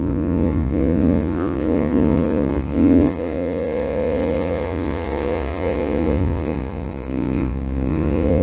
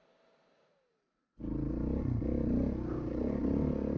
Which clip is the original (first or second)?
second